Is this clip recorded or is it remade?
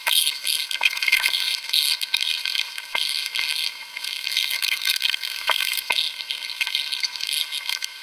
remade